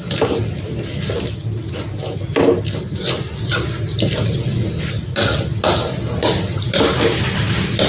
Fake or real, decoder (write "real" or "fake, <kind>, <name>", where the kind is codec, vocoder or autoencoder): real